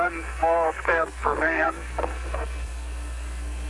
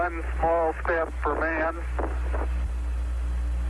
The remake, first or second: first